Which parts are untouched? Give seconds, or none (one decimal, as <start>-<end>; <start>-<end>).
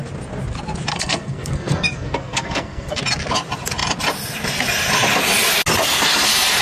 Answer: 0.0-0.9; 3.0-6.6